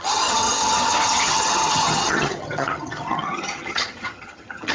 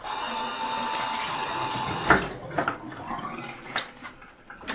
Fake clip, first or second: first